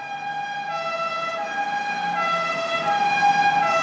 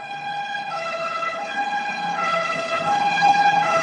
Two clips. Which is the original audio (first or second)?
first